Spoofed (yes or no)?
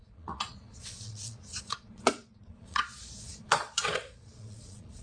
yes